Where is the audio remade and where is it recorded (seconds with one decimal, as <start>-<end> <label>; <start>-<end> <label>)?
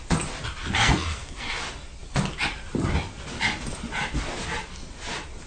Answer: 0.0-0.6 recorded; 0.6-1.6 remade; 1.6-5.5 recorded